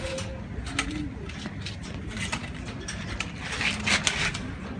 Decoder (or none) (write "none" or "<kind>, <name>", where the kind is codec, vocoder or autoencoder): none